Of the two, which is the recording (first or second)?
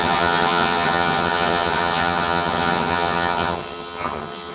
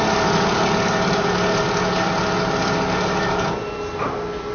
second